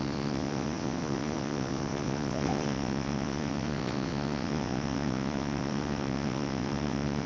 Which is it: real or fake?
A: fake